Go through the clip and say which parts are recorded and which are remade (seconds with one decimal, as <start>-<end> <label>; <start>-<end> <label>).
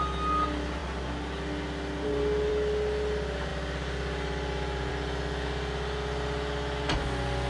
0.0-7.5 recorded